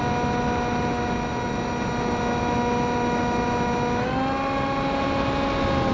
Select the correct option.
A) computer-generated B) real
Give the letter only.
B